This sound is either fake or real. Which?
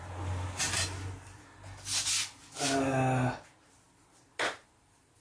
real